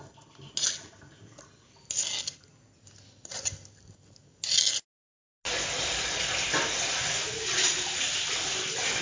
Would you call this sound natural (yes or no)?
yes